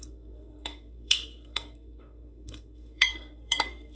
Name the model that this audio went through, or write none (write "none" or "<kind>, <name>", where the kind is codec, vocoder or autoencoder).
codec, SNAC